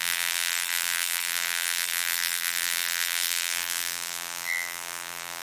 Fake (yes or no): yes